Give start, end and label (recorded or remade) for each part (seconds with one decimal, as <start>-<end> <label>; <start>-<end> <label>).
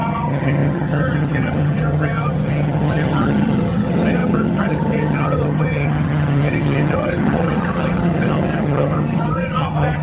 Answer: 0.0-10.0 remade